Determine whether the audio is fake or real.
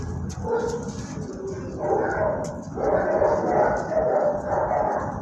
real